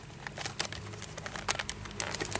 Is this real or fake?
real